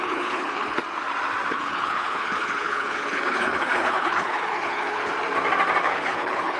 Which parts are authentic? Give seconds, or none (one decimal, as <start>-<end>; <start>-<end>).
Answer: 0.8-1.5; 5.1-5.8